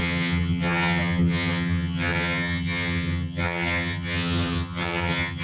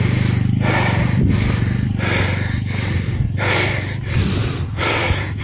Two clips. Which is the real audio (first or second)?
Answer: second